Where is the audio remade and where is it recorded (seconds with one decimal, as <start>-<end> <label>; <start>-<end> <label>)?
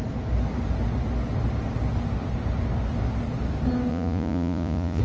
0.0-3.9 recorded; 3.9-5.0 remade